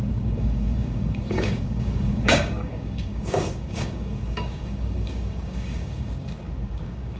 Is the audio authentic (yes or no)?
no